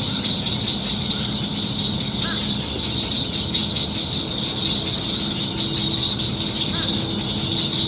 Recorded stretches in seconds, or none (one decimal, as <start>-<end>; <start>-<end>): 0.0-7.9